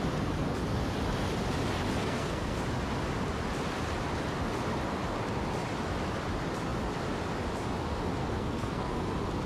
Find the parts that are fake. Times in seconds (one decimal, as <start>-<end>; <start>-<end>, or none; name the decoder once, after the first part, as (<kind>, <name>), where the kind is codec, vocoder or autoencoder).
2.0-2.6 (codec, SNAC); 8.2-9.1